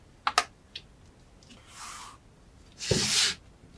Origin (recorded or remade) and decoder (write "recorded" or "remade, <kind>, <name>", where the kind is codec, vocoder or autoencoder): recorded